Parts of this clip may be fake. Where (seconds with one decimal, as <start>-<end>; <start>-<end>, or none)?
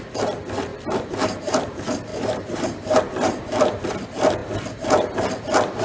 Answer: 0.7-1.6; 2.1-3.0